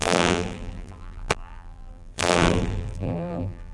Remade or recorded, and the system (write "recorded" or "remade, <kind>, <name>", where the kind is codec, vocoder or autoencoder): remade, vocoder, BigVGAN v2